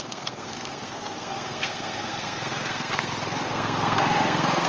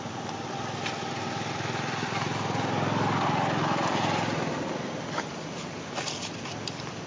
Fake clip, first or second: first